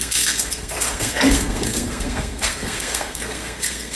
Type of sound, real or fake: fake